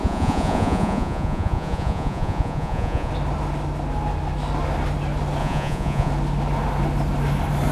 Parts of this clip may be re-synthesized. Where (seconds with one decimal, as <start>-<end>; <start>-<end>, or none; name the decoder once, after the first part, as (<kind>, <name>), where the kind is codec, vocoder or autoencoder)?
0.0-3.1 (vocoder, Vocos); 5.4-6.1